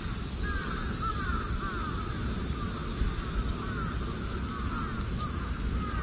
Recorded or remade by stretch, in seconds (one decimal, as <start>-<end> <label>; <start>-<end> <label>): 0.0-6.0 recorded